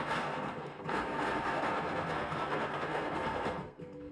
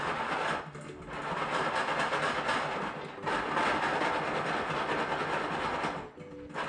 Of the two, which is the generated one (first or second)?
first